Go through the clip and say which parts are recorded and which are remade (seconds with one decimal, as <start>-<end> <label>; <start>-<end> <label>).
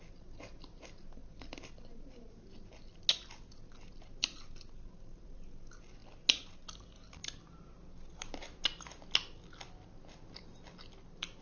0.0-11.4 recorded